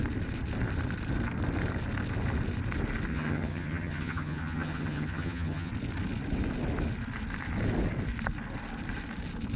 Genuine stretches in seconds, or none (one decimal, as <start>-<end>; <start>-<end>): 0.0-3.1; 5.7-9.6